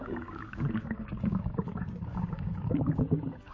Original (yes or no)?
no